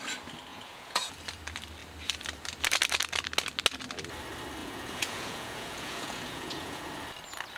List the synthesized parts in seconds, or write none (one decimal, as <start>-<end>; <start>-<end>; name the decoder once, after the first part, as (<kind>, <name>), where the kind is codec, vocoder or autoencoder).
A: 0.5-1.1 (vocoder, Vocos); 4.6-6.9